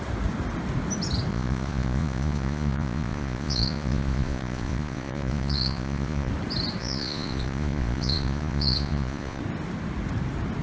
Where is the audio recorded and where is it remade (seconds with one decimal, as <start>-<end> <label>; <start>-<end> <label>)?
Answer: 0.0-1.3 recorded; 1.3-6.3 remade; 6.3-6.8 recorded; 6.8-9.4 remade; 9.4-10.6 recorded